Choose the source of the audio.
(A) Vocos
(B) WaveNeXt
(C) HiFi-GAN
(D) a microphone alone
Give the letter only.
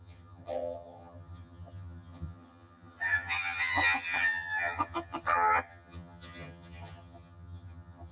C